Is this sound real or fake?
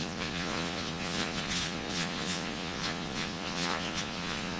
fake